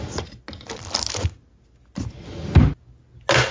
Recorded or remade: recorded